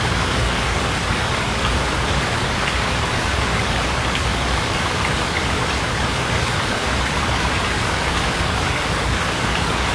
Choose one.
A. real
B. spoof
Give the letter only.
B